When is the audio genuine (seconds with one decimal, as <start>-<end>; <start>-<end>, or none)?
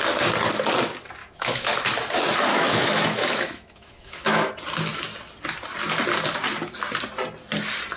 0.0-1.2; 1.9-2.5; 4.5-8.0